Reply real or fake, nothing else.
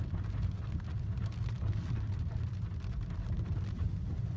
real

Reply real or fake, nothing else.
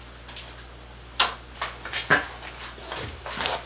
real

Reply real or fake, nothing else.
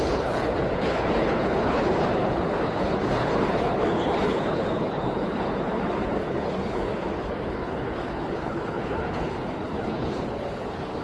fake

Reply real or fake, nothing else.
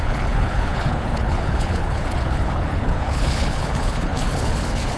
fake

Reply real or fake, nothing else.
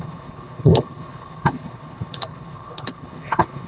fake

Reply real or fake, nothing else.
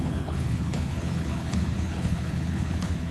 fake